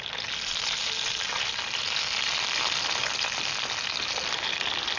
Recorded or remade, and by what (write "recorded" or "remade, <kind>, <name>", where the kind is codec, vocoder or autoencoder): recorded